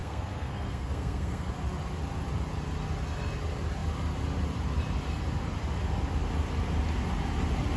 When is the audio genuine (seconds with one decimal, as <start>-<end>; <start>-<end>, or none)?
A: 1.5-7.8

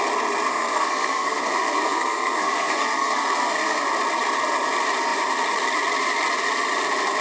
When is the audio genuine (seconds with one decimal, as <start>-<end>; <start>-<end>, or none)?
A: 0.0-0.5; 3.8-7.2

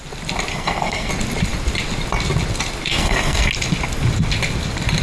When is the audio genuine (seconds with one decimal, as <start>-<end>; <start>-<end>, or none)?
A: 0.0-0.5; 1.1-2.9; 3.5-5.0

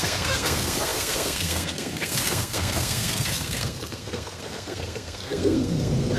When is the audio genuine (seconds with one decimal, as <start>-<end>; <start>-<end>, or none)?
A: none

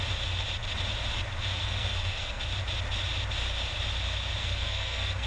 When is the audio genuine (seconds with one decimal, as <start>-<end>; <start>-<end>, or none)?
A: 0.0-1.6; 2.4-4.4